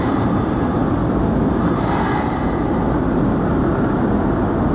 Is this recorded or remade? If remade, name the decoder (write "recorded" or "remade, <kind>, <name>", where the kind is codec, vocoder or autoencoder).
recorded